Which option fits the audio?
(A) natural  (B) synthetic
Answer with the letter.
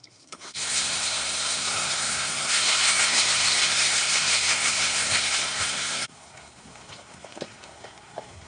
B